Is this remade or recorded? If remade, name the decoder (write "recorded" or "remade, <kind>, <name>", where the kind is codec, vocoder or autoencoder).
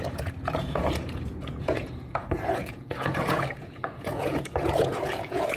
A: remade, vocoder, Vocos